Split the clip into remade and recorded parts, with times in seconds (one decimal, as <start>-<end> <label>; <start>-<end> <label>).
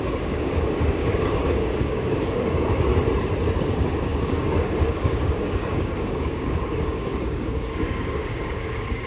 0.0-2.9 remade; 2.9-3.6 recorded; 3.6-9.1 remade